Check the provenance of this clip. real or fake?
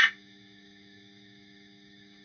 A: fake